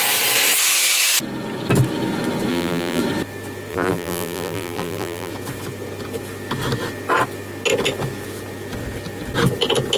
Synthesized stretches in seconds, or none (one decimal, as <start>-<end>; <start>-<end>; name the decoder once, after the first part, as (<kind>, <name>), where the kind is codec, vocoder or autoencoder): 2.5-3.0 (vocoder, BigVGAN v2); 3.7-5.3